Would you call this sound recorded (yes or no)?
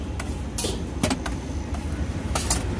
yes